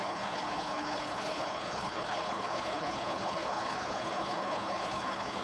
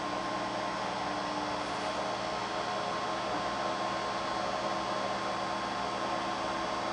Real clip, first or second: second